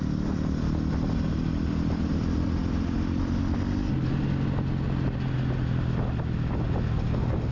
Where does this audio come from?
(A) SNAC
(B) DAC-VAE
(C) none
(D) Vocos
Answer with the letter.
C